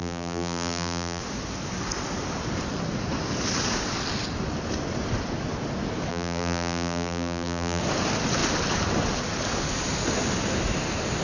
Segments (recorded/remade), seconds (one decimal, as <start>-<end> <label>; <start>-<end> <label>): 0.0-1.2 remade; 1.2-6.1 recorded; 6.1-7.8 remade; 7.8-11.2 recorded